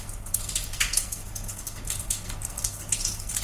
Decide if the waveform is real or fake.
fake